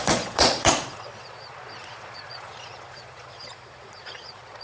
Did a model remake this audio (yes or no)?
yes